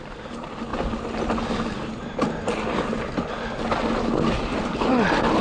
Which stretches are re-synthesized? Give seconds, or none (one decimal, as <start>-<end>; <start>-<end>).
none